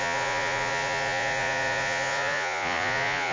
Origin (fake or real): fake